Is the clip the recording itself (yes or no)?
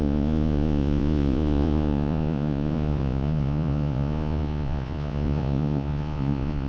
no